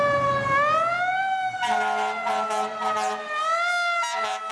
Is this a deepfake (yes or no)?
no